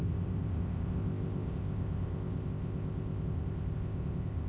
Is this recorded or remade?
remade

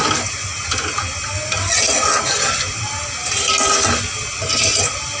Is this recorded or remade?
recorded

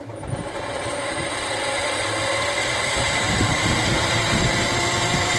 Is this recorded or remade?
remade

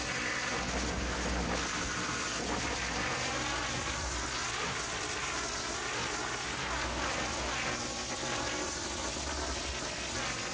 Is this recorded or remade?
recorded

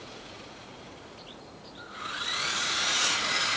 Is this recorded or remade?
remade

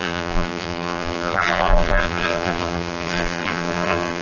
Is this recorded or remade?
remade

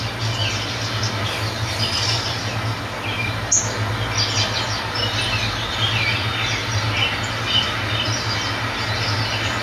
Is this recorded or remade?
recorded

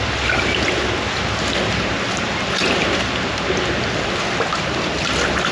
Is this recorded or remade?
recorded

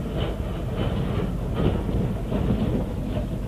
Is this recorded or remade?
recorded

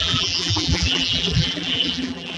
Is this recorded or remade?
remade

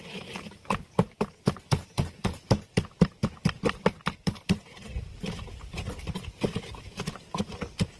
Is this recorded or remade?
recorded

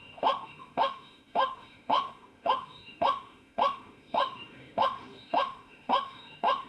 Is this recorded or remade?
remade